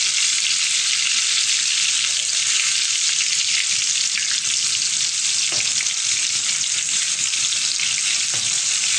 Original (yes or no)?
yes